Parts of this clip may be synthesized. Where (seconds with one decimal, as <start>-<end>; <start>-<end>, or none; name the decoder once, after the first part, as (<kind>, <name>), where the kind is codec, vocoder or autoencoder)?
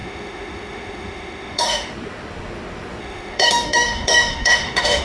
0.0-1.9 (autoencoder, DAC-VAE); 3.0-5.0